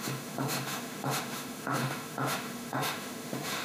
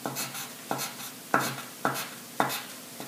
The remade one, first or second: first